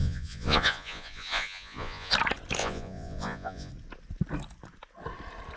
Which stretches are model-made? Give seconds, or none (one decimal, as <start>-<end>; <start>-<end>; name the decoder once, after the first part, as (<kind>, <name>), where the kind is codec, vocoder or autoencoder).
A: 0.0-2.1 (vocoder, Vocos); 2.6-3.7